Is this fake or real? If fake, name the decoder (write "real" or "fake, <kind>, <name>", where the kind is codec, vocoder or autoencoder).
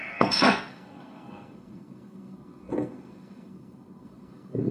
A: fake, codec, SNAC